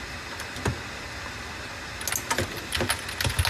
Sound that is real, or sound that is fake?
real